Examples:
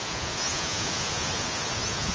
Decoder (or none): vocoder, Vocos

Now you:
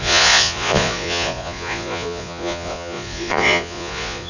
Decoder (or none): vocoder, Vocos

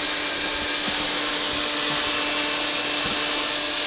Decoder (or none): none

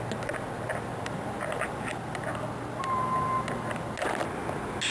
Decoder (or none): none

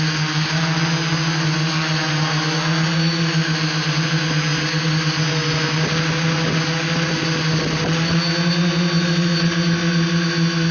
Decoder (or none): none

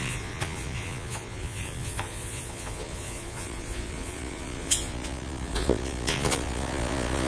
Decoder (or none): vocoder, Vocos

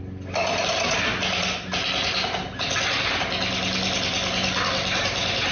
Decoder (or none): none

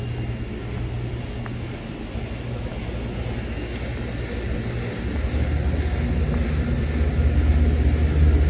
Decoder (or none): none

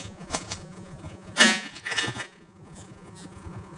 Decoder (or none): vocoder, Vocos